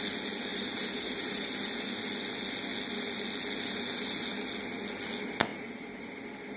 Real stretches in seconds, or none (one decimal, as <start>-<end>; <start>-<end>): 0.0-0.5; 1.5-5.5; 6.1-6.6